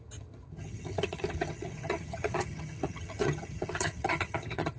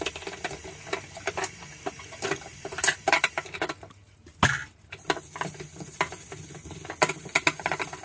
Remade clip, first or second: first